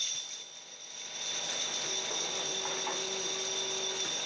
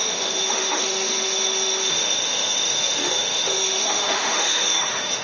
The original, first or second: first